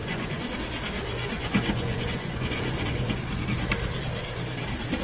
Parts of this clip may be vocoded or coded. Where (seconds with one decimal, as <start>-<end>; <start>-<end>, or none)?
0.0-0.5; 1.1-3.2

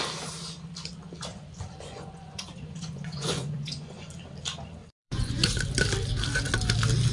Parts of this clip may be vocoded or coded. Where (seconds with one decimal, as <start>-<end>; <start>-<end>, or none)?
1.3-4.1; 4.8-5.6

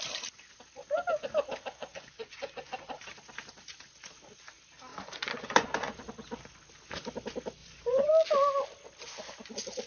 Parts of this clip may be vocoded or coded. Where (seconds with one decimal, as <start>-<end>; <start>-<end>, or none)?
1.8-3.0; 4.9-6.0; 7.6-8.1